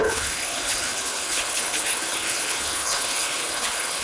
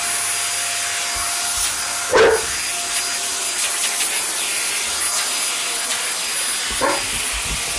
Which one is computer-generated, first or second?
first